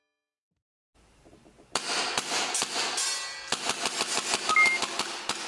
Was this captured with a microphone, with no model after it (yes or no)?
yes